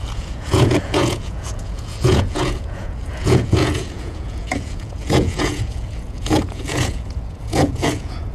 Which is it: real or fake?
fake